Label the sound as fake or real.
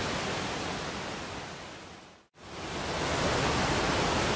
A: real